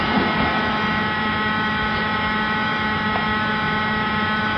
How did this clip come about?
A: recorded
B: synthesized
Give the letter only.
B